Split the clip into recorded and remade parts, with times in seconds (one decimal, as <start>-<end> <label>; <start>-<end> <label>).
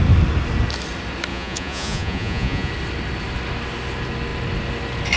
0.0-1.3 recorded; 1.3-2.7 remade; 2.7-5.2 recorded